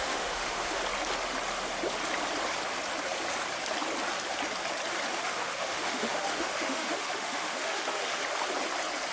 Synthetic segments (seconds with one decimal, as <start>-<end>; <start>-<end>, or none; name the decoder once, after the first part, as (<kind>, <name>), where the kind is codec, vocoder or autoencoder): 0.0-0.8 (autoencoder, DAC-VAE); 5.2-8.2